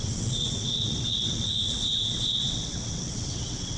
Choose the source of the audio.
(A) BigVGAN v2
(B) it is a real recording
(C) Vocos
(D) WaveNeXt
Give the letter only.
D